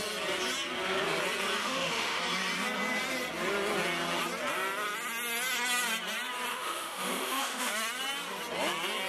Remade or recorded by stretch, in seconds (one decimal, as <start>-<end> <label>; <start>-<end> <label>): 0.0-1.6 recorded; 1.6-2.2 remade; 2.2-6.5 recorded; 6.5-7.7 remade; 7.7-9.1 recorded